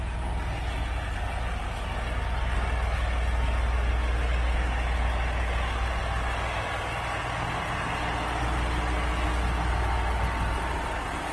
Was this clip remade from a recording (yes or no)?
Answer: no